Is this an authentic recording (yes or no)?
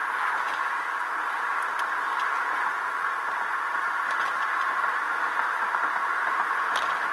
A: yes